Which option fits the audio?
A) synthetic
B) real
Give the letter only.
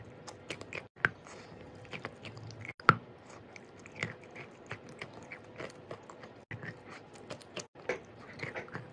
B